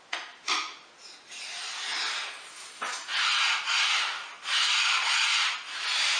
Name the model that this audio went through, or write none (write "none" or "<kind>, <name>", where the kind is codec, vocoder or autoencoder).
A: none